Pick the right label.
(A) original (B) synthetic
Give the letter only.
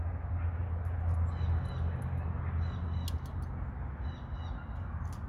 A